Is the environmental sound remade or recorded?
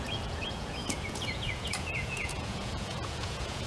remade